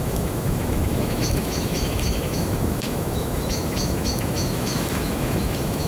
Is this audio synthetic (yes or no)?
yes